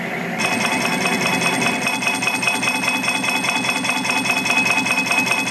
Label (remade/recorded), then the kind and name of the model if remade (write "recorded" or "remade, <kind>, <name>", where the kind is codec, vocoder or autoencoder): recorded